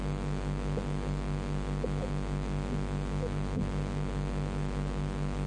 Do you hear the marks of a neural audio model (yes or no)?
no